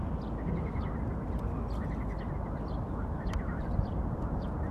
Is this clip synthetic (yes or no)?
no